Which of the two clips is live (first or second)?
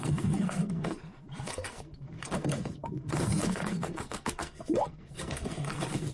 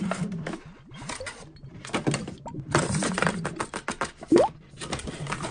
second